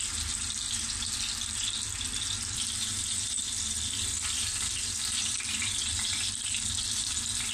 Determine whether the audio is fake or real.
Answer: real